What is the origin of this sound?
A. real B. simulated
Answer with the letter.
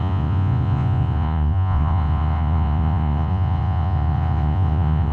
B